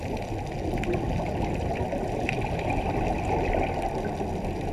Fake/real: real